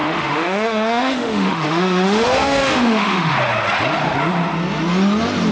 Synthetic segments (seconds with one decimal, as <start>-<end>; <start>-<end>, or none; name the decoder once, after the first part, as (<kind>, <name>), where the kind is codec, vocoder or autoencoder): 0.0-3.3 (autoencoder, DAC-VAE)